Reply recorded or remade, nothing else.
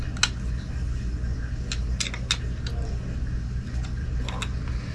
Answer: recorded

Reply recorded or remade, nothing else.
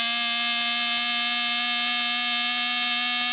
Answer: recorded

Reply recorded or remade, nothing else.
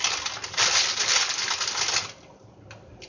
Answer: recorded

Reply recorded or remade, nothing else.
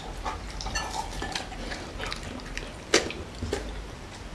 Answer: recorded